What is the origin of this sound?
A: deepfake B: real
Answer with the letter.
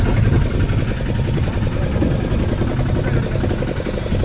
B